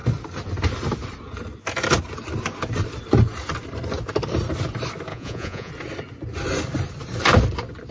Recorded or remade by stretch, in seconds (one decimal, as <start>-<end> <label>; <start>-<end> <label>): 0.0-5.1 recorded; 5.1-5.7 remade; 5.7-7.9 recorded